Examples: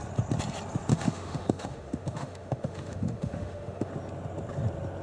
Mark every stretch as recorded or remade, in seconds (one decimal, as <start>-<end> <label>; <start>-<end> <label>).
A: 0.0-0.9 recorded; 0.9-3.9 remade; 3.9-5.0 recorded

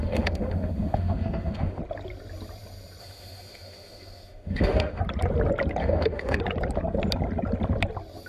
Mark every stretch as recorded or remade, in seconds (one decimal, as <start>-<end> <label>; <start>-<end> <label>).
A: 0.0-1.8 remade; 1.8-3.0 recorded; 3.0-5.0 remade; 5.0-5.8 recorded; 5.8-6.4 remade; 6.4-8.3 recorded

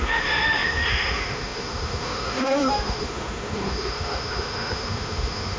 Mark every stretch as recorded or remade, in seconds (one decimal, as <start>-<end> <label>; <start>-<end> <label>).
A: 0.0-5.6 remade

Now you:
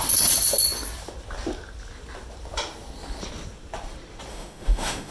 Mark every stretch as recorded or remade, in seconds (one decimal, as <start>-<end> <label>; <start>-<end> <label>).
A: 0.0-4.3 recorded; 4.3-5.1 remade

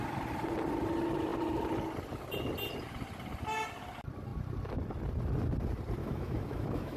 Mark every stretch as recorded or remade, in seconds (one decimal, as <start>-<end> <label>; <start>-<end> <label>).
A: 0.0-6.0 recorded; 6.0-7.0 remade

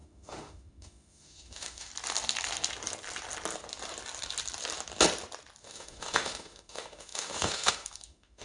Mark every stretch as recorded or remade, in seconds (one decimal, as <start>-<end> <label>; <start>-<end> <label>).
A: 0.0-1.9 remade; 1.9-5.6 recorded; 5.6-8.4 remade

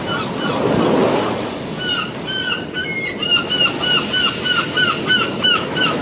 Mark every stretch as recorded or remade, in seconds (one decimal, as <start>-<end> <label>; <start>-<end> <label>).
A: 0.0-5.3 recorded; 5.3-6.0 remade

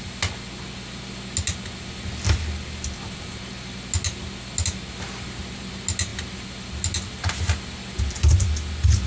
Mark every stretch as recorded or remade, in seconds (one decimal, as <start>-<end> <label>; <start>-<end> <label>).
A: 0.0-9.1 recorded